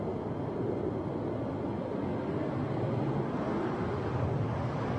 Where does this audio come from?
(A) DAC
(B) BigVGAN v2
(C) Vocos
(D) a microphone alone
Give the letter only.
D